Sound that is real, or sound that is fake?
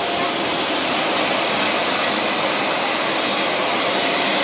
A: real